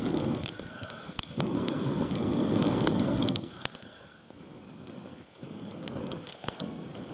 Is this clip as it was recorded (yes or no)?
no